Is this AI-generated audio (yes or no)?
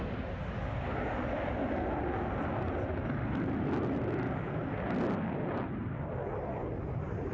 no